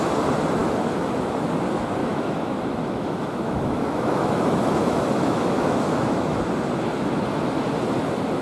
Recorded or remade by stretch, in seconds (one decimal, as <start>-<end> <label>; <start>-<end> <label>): 0.0-0.6 recorded; 0.6-1.5 remade; 1.5-2.0 recorded; 2.0-6.4 remade; 6.4-8.4 recorded